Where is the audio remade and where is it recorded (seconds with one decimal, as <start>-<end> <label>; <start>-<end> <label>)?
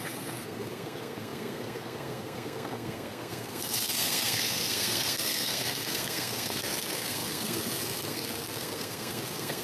0.0-9.6 remade